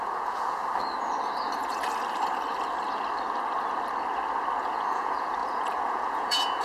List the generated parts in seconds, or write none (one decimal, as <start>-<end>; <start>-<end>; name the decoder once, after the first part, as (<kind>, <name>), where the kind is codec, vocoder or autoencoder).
0.0-0.6 (vocoder, Vocos); 4.6-6.6